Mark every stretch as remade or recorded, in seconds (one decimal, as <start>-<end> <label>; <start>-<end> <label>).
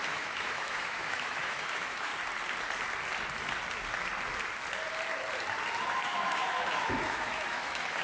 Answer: 0.0-2.1 remade; 2.1-5.9 recorded; 5.9-8.0 remade